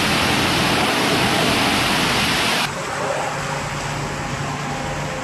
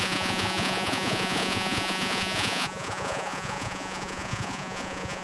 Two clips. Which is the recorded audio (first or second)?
first